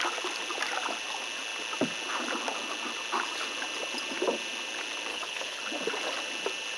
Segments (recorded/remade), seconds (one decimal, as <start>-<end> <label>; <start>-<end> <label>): 0.0-5.1 recorded; 5.1-5.6 remade; 5.6-6.8 recorded